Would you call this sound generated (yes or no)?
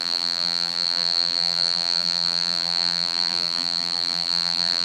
yes